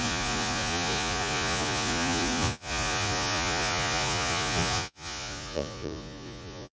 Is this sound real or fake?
fake